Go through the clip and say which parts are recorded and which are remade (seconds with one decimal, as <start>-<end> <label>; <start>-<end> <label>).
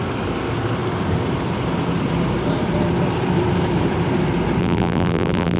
0.0-4.6 recorded; 4.6-5.6 remade